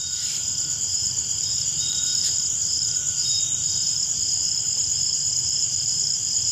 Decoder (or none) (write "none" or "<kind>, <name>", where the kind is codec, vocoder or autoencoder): vocoder, BigVGAN v2